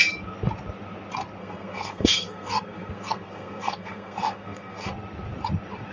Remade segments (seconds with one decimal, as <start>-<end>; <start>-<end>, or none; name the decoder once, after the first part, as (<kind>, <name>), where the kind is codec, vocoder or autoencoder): 1.4-4.9 (codec, SNAC)